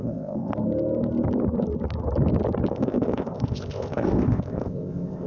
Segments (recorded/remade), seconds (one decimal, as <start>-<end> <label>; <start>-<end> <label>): 0.0-0.5 remade; 0.5-2.7 recorded; 2.7-5.3 remade